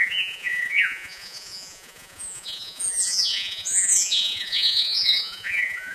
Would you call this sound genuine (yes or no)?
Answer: no